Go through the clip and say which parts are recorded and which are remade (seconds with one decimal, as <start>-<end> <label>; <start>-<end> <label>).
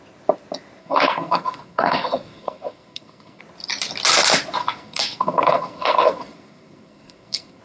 0.0-0.8 recorded; 0.8-3.4 remade; 3.4-4.6 recorded; 4.6-7.6 remade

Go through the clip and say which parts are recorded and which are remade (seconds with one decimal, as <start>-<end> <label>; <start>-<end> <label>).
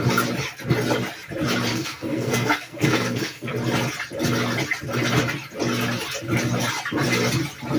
0.0-1.7 recorded; 1.7-3.5 remade; 3.5-7.8 recorded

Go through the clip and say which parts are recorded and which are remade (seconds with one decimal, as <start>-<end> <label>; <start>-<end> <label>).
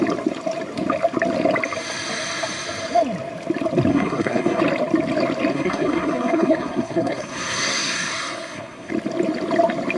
0.0-3.9 recorded; 3.9-4.6 remade; 4.6-5.5 recorded; 5.5-8.9 remade; 8.9-10.0 recorded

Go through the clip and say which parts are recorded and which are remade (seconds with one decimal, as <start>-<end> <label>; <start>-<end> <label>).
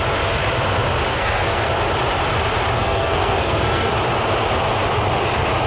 0.0-1.1 recorded; 1.1-1.7 remade; 1.7-2.8 recorded; 2.8-3.9 remade; 3.9-5.7 recorded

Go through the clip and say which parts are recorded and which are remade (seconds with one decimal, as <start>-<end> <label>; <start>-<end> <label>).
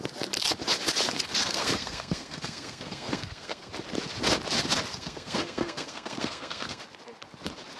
0.0-1.4 recorded; 1.4-3.7 remade; 3.7-4.9 recorded; 4.9-6.8 remade; 6.8-7.8 recorded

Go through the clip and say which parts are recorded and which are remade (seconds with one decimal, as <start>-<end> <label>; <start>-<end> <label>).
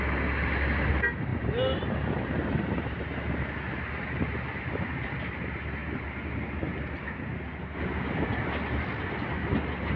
0.0-10.0 recorded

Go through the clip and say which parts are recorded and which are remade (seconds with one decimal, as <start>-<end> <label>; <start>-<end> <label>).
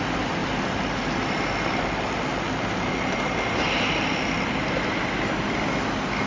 0.0-6.3 recorded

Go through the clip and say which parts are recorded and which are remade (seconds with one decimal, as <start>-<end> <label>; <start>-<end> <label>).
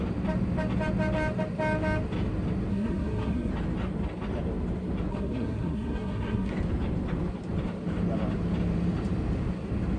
0.0-2.7 recorded; 2.7-3.5 remade; 3.5-5.1 recorded; 5.1-6.5 remade; 6.5-10.0 recorded